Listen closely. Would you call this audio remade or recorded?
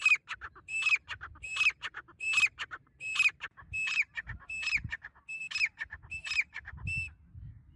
recorded